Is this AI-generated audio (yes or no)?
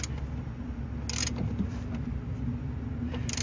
no